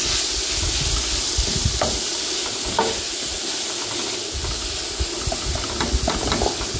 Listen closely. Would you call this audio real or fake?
real